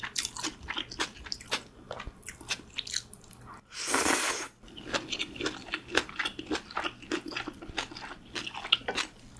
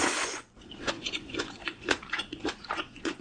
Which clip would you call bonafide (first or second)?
first